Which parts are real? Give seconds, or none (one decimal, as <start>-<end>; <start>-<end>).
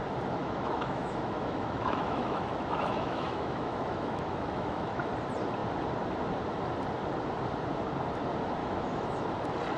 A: 0.0-0.4; 5.1-8.6; 9.2-9.8